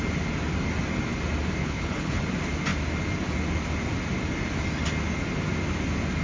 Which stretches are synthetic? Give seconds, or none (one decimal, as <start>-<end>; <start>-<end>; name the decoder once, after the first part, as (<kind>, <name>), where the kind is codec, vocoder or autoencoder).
1.6-2.2 (codec, HILCodec)